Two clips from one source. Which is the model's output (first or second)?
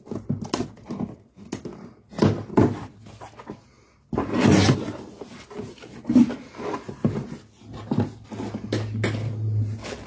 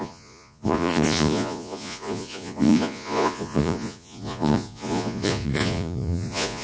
second